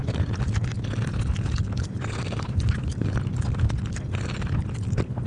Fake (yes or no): no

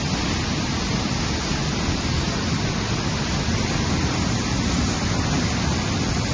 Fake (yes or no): no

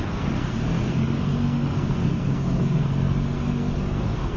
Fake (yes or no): yes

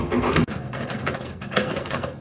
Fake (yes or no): yes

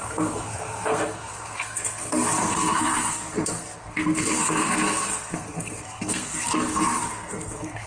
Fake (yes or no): yes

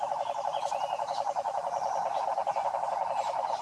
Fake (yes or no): no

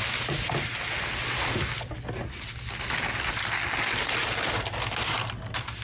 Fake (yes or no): no